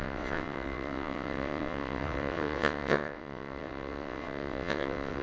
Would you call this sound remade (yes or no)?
yes